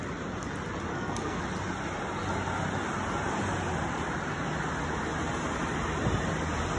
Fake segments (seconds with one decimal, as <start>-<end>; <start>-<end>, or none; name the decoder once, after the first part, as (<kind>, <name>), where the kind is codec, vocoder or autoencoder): 0.9-1.4 (codec, SNAC)